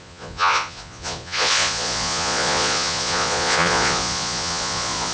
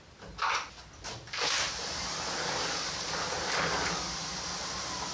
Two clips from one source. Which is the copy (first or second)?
first